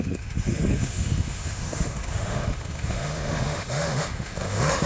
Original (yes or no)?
no